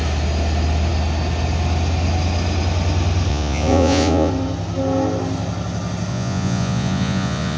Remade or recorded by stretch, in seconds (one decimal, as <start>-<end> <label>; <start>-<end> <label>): 0.0-3.3 recorded; 3.3-4.3 remade; 4.3-6.1 recorded; 6.1-7.6 remade